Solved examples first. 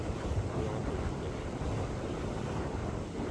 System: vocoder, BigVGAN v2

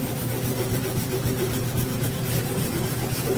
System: vocoder, BigVGAN v2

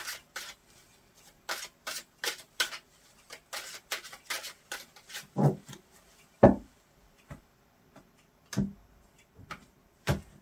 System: none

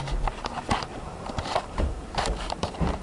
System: vocoder, BigVGAN v2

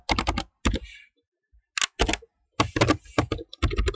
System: none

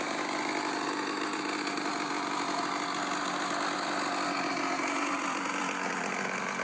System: none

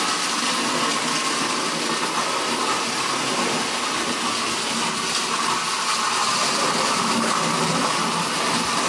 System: none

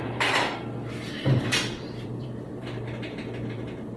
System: vocoder, BigVGAN v2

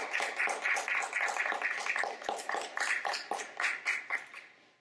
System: none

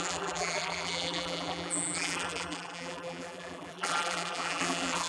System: vocoder, BigVGAN v2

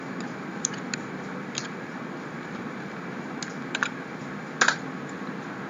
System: none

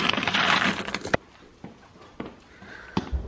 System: vocoder, BigVGAN v2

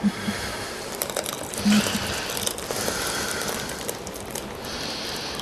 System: vocoder, BigVGAN v2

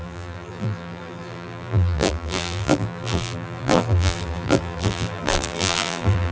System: vocoder, BigVGAN v2